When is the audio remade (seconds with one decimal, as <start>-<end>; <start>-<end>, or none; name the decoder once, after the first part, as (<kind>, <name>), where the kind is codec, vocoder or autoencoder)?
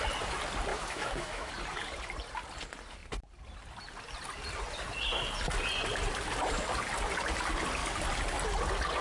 0.7-1.5 (autoencoder, DAC-VAE)